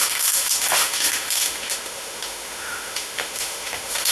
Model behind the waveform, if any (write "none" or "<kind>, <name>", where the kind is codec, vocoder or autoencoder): autoencoder, DAC-VAE